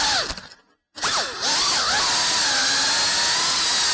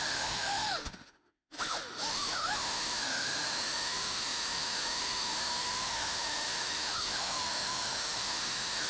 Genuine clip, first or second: first